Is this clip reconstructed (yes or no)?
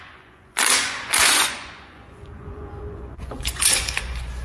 yes